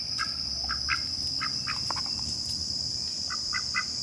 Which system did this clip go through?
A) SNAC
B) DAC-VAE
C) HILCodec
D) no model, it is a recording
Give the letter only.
D